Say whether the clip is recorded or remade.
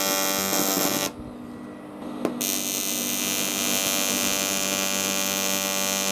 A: recorded